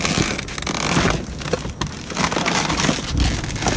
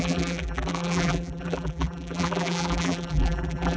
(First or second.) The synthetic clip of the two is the second